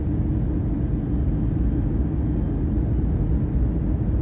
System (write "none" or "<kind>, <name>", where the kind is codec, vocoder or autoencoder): none